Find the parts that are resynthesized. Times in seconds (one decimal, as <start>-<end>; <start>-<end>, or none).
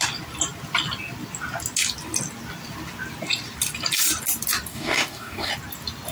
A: 4.7-5.5